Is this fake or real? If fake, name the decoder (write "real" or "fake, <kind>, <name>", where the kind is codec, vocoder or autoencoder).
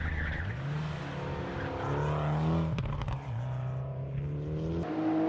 real